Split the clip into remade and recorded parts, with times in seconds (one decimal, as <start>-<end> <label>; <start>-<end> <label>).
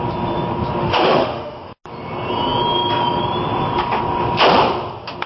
0.0-0.8 recorded; 0.8-1.8 remade; 1.8-5.3 recorded